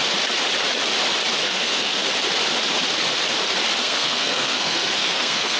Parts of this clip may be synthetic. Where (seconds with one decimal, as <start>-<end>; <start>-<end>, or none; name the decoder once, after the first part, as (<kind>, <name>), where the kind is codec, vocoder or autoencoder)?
1.4-2.1 (codec, SNAC); 3.8-5.6